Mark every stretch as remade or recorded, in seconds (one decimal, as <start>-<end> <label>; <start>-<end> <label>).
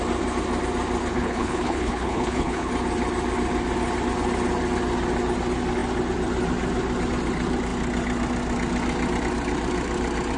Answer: 0.0-1.1 recorded; 1.1-2.7 remade; 2.7-10.4 recorded